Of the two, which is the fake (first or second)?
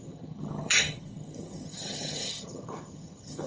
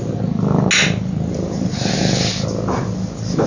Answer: first